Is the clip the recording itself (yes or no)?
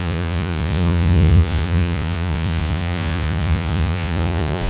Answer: no